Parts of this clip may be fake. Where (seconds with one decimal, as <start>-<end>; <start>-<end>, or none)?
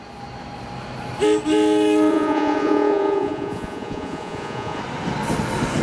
2.1-4.8